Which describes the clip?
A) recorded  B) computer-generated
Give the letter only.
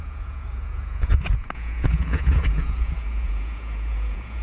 B